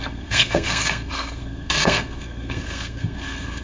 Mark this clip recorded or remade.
remade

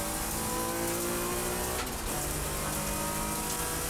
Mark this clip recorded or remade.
recorded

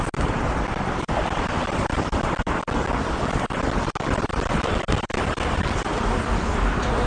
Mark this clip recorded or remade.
recorded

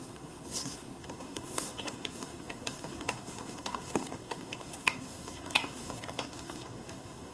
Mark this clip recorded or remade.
remade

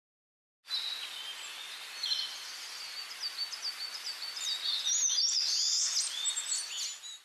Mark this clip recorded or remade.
recorded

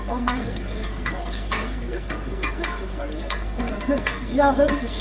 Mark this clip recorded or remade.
remade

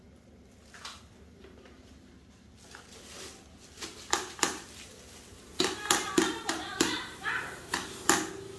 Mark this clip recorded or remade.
recorded